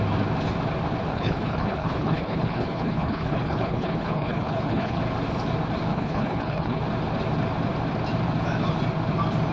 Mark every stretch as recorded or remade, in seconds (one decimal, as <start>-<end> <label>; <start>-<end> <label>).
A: 0.0-1.1 recorded; 1.1-5.0 remade; 5.0-5.9 recorded; 5.9-6.8 remade; 6.8-9.5 recorded